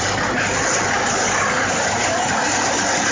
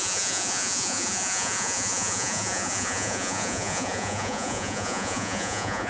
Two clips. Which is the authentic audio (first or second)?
first